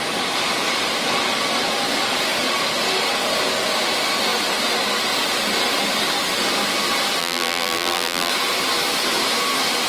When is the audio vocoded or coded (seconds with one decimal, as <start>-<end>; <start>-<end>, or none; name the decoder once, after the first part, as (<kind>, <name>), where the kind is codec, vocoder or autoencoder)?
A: 7.2-8.3 (vocoder, BigVGAN v2)